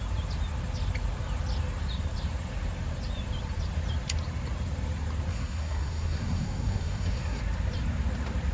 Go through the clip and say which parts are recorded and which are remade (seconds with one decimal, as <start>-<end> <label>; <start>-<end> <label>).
0.0-5.3 recorded; 5.3-7.4 remade; 7.4-8.5 recorded